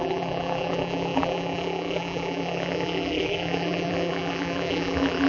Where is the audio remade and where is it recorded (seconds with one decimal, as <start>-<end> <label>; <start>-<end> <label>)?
0.0-5.3 remade